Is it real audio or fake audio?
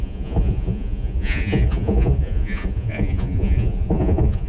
fake